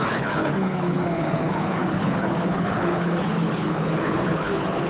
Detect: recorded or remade remade